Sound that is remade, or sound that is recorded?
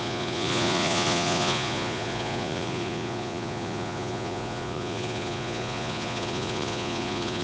remade